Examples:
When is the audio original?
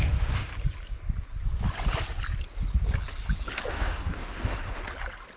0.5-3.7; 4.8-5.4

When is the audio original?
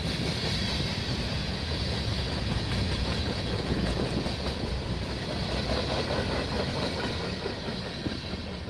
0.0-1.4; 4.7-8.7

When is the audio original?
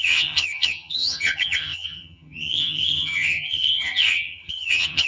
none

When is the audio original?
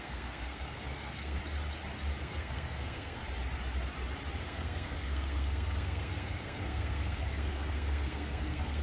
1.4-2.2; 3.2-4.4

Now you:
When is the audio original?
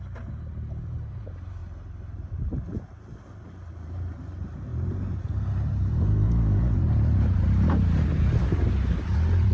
0.0-9.5